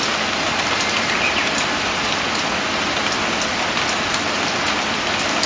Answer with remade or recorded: recorded